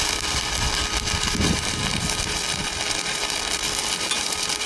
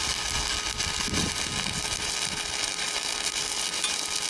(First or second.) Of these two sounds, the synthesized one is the first